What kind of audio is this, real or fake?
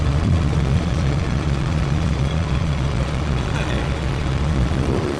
fake